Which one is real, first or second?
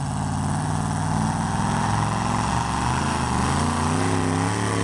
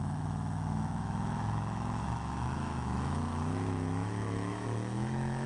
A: first